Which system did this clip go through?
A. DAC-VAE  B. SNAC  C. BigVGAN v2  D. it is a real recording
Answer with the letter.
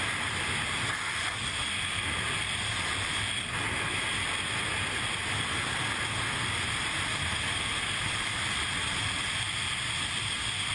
D